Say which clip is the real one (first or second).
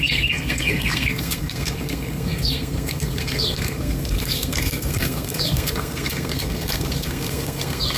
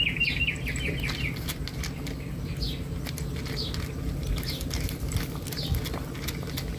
second